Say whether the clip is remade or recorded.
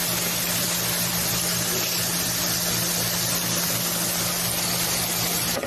recorded